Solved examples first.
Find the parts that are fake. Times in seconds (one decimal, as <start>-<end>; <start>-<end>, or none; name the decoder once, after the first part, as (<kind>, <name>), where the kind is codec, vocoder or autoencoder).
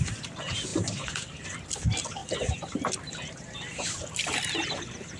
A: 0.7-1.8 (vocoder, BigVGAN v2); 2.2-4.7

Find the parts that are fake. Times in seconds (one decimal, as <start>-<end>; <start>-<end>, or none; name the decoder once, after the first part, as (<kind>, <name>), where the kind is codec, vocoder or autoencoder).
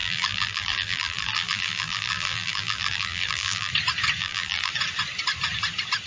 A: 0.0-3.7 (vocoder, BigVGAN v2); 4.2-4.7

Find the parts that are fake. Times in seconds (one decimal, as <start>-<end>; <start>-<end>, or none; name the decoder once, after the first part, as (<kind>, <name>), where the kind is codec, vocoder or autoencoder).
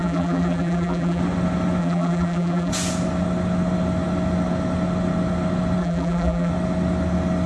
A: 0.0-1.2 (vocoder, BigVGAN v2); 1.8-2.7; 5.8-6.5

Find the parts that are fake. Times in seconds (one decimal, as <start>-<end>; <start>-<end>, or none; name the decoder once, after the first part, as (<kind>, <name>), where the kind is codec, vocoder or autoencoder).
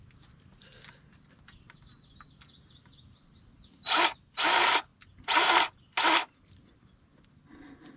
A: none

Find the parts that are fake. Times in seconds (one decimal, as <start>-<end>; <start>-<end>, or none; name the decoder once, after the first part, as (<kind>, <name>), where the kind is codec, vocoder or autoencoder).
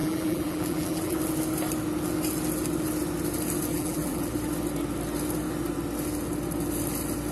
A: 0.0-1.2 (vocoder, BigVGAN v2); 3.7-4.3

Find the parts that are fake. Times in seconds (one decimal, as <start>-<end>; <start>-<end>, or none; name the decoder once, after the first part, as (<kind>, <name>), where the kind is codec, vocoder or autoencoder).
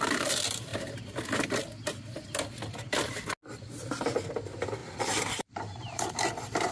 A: 4.8-6.3 (vocoder, BigVGAN v2)